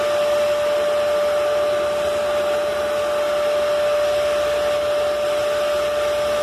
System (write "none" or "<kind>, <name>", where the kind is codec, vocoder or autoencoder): none